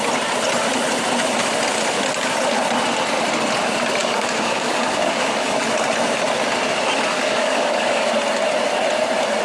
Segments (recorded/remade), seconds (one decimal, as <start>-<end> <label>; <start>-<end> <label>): 0.0-4.0 recorded; 4.0-5.6 remade; 5.6-7.1 recorded; 7.1-8.1 remade; 8.1-9.4 recorded